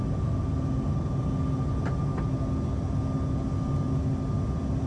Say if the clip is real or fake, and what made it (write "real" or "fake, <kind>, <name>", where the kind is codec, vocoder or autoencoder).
real